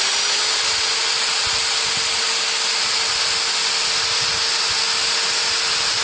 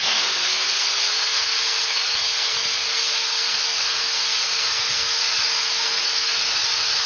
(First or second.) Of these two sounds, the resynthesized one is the second